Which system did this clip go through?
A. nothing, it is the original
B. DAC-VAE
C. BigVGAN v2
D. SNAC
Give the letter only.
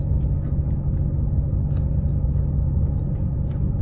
A